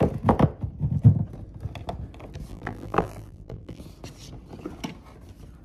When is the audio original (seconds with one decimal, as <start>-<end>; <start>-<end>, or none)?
0.0-2.5; 3.8-5.6